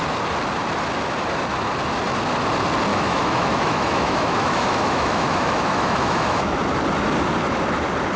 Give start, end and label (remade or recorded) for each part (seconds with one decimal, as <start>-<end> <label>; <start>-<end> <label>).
0.0-2.9 recorded; 2.9-6.6 remade; 6.6-8.2 recorded